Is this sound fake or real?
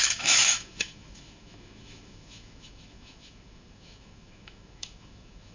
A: fake